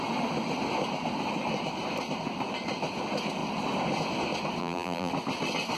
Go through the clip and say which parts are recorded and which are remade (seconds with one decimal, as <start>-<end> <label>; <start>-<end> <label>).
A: 0.0-4.6 recorded; 4.6-5.1 remade; 5.1-5.8 recorded